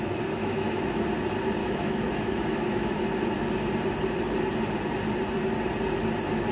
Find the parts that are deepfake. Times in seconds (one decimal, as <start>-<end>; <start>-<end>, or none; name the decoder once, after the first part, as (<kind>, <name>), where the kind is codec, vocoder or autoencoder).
0.4-1.0 (autoencoder, DAC-VAE); 1.6-3.0